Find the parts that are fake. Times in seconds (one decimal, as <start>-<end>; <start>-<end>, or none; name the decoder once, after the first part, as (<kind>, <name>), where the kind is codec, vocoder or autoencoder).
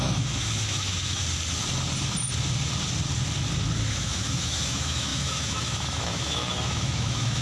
0.0-1.2 (autoencoder, DAC-VAE); 3.9-7.4